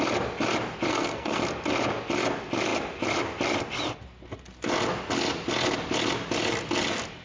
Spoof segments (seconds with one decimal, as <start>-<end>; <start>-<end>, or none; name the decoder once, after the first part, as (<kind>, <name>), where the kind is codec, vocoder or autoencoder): 0.9-1.4 (codec, SNAC)